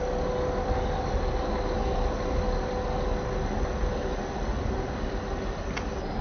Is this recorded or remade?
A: recorded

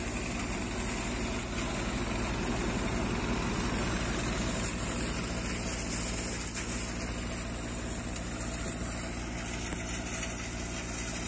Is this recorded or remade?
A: recorded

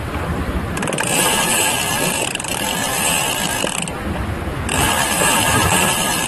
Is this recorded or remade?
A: remade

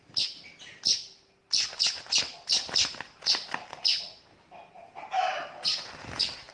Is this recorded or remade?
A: recorded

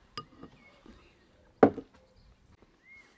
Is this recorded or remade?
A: recorded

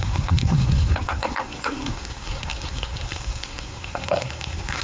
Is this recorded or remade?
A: remade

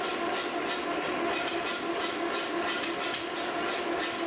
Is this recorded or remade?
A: recorded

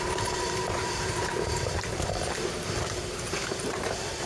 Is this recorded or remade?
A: remade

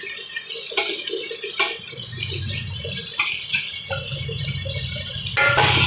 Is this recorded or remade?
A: recorded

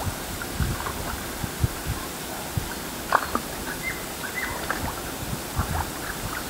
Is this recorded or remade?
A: recorded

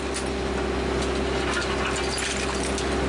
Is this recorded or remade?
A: recorded